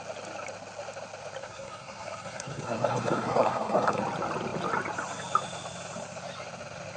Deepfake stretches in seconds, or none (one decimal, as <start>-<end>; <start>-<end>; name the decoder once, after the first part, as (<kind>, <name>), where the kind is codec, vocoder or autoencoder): 1.4-4.0 (codec, SNAC)